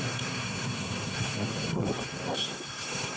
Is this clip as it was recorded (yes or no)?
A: no